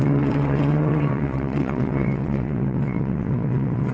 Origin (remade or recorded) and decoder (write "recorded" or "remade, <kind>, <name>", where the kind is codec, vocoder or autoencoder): remade, vocoder, WaveNeXt